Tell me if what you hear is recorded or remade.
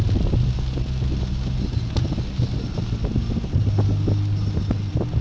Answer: recorded